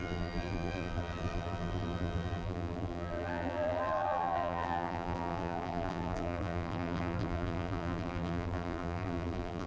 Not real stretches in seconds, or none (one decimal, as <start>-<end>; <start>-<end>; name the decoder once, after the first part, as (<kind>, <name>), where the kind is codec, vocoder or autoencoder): 0.0-9.7 (vocoder, BigVGAN v2)